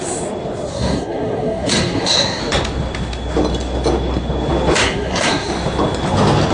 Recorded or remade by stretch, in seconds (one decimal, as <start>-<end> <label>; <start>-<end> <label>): 0.0-0.7 recorded; 0.7-2.4 remade; 2.4-4.8 recorded; 4.8-5.5 remade; 5.5-6.5 recorded